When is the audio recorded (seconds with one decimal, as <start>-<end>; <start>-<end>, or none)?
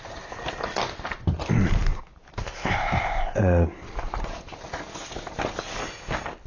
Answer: 0.0-2.4; 3.4-6.5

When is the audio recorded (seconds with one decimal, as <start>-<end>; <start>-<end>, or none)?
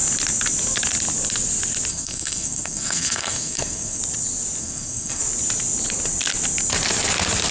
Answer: 0.0-1.9; 4.0-4.6; 5.2-7.5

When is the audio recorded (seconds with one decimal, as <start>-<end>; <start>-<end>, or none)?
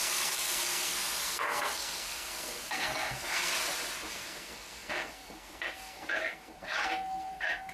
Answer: 3.5-4.1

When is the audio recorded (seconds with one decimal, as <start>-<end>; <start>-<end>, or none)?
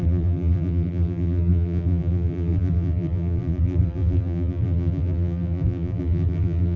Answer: none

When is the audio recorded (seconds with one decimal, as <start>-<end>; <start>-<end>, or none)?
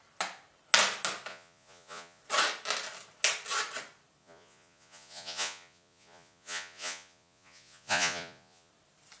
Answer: 0.0-1.3; 2.2-4.2; 8.7-9.2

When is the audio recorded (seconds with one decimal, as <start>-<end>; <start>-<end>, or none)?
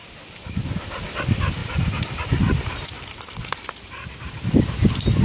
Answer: 0.5-1.6; 4.0-5.2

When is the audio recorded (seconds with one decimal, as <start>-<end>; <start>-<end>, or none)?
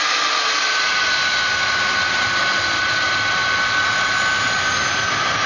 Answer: 0.0-5.5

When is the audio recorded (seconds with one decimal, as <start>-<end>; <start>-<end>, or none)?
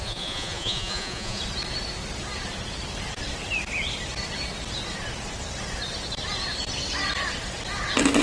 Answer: 1.4-8.2